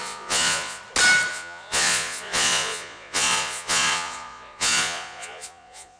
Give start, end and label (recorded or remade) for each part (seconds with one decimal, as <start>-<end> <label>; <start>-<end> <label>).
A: 0.0-0.8 remade; 0.8-1.3 recorded; 1.3-6.0 remade